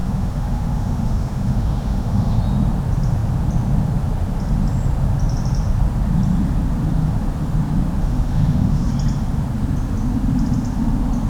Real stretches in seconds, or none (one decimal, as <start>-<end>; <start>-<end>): 2.4-8.0; 8.9-11.3